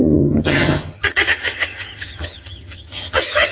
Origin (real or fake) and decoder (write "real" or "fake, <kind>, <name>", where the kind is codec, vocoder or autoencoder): fake, vocoder, HiFi-GAN